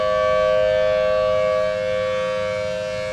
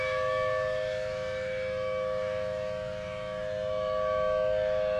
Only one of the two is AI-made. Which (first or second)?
second